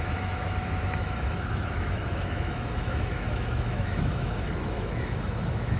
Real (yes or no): no